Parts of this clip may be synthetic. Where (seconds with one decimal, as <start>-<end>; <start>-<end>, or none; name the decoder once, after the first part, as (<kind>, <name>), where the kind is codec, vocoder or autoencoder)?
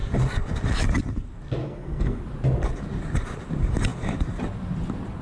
1.6-2.2 (codec, SNAC)